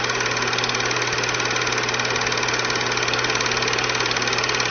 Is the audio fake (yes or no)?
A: no